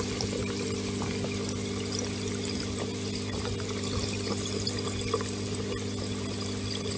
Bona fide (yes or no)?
yes